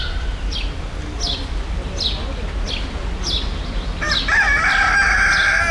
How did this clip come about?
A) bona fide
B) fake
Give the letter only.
A